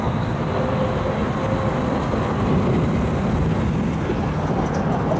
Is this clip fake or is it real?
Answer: real